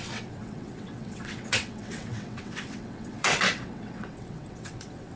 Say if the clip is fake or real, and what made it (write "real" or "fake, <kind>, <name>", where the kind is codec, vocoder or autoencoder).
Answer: fake, vocoder, WaveNeXt